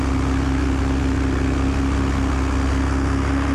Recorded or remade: recorded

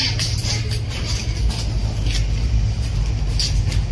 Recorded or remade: recorded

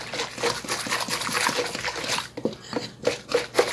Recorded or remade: recorded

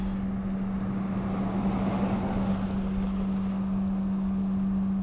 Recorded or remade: recorded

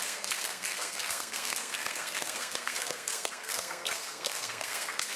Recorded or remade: remade